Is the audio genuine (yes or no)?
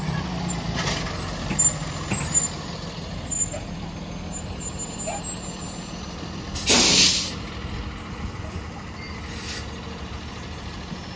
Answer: yes